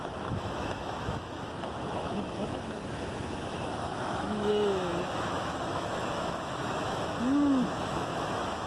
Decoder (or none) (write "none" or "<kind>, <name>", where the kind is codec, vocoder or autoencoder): autoencoder, DAC-VAE